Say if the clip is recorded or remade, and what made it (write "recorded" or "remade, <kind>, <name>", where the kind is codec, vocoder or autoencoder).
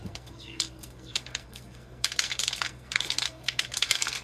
remade, codec, SNAC